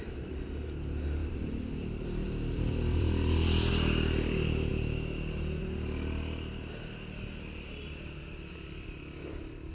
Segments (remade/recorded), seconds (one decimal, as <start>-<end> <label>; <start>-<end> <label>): 0.0-1.2 recorded; 1.2-3.7 remade; 3.7-9.7 recorded